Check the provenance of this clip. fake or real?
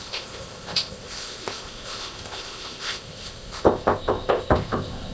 fake